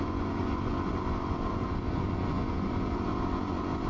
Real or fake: fake